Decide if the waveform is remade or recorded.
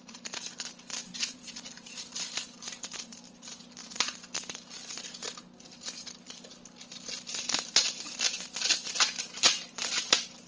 recorded